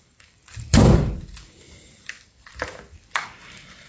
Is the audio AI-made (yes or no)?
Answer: yes